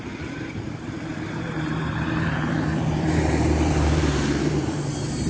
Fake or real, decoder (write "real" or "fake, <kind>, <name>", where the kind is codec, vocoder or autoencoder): fake, vocoder, BigVGAN v2